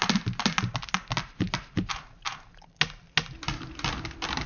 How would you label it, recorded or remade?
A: recorded